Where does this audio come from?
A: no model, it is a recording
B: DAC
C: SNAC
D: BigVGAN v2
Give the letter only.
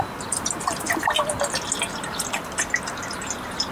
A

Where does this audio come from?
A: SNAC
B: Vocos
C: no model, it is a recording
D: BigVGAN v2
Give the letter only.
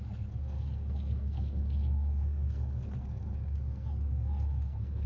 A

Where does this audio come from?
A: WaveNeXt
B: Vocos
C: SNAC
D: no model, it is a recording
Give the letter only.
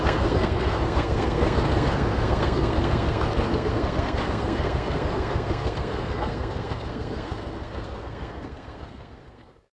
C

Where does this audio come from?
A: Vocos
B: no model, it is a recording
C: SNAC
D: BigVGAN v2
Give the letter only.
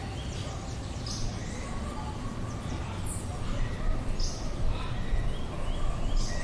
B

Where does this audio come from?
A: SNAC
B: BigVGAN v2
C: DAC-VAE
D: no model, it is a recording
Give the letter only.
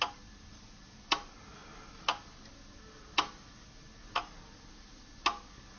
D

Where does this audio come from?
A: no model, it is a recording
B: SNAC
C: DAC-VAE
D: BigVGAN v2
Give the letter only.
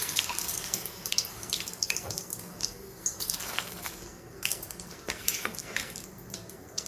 B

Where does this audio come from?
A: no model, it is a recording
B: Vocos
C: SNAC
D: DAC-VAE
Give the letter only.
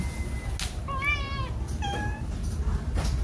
A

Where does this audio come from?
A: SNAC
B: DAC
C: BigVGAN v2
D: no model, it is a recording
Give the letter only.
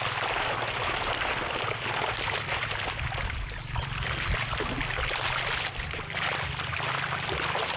D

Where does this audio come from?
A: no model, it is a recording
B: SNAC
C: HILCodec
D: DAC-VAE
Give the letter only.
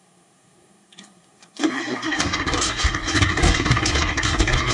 B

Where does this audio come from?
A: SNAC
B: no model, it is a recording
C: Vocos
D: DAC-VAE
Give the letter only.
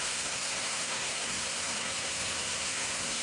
A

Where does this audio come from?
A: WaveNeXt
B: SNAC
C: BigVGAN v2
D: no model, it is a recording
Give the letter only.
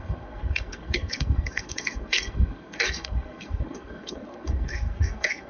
B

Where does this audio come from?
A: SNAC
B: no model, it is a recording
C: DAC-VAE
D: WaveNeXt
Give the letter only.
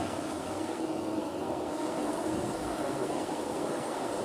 A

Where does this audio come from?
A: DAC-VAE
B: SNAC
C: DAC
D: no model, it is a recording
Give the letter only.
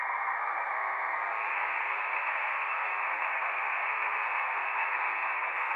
B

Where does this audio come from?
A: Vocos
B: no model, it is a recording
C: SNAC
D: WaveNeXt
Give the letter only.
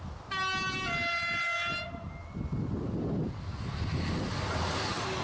B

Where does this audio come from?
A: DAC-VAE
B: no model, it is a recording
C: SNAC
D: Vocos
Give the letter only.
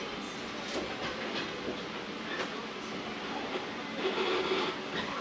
B